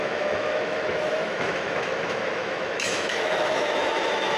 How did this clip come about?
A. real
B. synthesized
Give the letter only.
B